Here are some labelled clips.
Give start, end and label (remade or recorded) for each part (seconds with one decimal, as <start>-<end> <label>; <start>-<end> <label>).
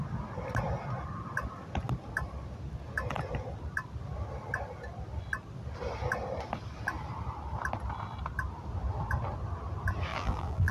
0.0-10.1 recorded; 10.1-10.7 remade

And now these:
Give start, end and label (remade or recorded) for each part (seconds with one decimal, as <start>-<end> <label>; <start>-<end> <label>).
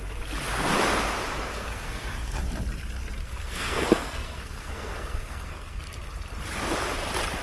0.0-1.5 recorded; 1.5-2.4 remade; 2.4-3.2 recorded; 3.2-5.9 remade; 5.9-7.4 recorded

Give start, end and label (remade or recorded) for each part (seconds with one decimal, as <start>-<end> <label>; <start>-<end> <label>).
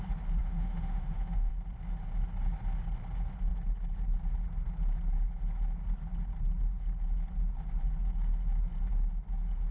0.0-0.4 recorded; 0.4-1.5 remade; 1.5-9.7 recorded